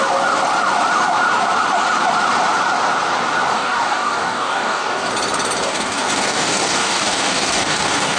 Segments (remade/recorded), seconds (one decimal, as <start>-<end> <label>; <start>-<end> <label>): 0.0-3.5 recorded; 3.5-5.1 remade; 5.1-5.6 recorded; 5.6-8.2 remade